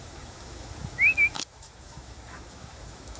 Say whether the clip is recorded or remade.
remade